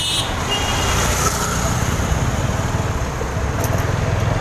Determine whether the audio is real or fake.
real